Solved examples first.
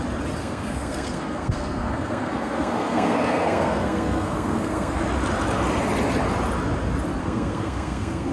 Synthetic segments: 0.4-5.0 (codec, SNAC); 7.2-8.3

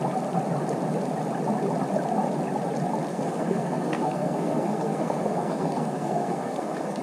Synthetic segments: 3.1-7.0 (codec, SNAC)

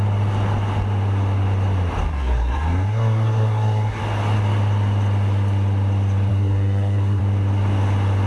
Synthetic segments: 2.1-4.0 (codec, SNAC); 6.3-7.2